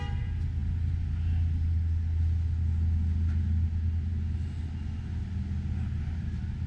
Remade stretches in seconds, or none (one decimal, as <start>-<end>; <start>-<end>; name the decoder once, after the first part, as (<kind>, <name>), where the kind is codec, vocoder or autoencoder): none